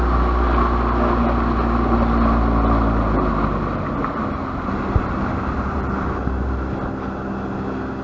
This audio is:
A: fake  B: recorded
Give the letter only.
B